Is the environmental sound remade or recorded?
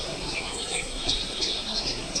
remade